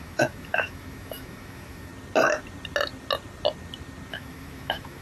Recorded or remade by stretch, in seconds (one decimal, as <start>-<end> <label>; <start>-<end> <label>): 0.0-1.9 remade; 1.9-4.1 recorded; 4.1-5.0 remade